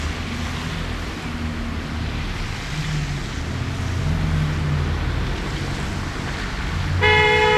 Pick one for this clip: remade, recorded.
recorded